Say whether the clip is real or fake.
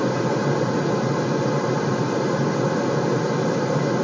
real